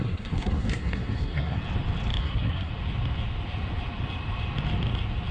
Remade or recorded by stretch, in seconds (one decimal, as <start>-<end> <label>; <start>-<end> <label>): 0.0-1.6 remade; 1.6-2.2 recorded; 2.2-2.7 remade; 2.7-5.3 recorded